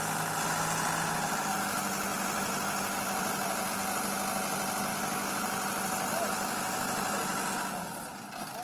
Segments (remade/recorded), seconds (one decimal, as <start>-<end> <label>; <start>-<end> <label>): 0.0-2.1 recorded; 2.1-3.7 remade; 3.7-4.9 recorded; 4.9-7.5 remade; 7.5-8.6 recorded